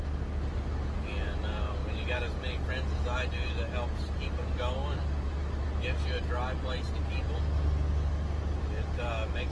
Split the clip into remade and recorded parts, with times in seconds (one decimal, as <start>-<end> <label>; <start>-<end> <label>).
0.0-9.5 recorded